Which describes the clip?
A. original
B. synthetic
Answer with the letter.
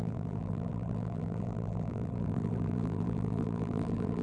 B